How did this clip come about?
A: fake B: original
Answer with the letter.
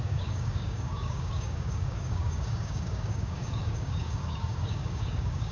A